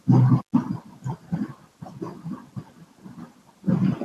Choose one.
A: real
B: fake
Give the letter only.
A